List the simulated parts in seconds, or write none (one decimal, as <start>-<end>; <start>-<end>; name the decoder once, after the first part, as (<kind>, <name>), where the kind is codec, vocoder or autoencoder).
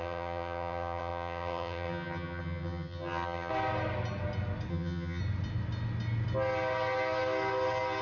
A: 0.0-3.5 (vocoder, HiFi-GAN); 4.7-5.2